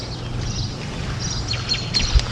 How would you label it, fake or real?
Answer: real